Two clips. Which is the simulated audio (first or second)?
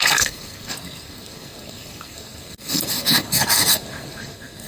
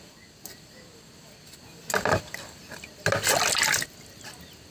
first